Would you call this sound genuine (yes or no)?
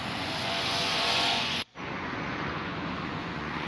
no